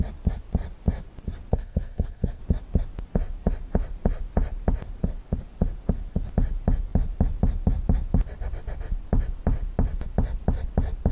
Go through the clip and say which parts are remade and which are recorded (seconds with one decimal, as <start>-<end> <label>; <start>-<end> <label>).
0.0-1.5 recorded; 1.5-2.4 remade; 2.4-11.1 recorded